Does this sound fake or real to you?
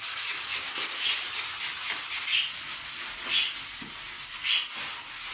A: real